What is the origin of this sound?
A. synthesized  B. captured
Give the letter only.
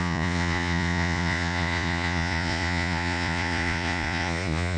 A